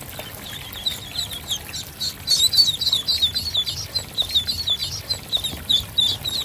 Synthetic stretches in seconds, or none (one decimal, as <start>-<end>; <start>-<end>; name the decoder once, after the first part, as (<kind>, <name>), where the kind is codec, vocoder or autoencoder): none